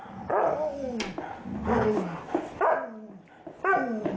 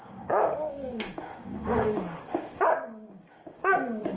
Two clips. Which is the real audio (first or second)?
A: first